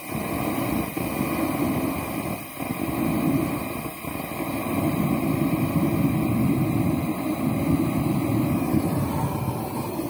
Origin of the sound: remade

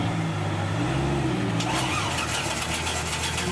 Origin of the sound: recorded